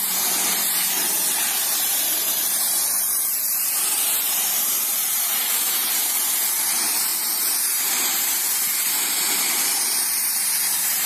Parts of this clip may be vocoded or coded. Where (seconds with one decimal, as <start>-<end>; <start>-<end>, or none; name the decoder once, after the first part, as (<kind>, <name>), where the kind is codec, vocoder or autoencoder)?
0.0-11.1 (vocoder, BigVGAN v2)

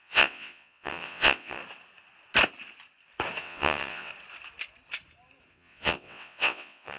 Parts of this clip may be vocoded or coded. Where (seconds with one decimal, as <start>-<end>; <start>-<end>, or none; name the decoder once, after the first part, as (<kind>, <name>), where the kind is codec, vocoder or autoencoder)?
0.0-1.6 (vocoder, WaveNeXt); 3.4-4.1; 5.5-7.0

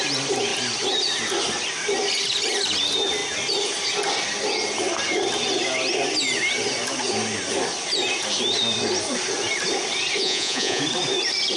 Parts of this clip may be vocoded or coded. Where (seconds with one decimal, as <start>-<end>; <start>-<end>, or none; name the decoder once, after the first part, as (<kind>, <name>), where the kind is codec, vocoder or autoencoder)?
10.2-10.8 (vocoder, Vocos)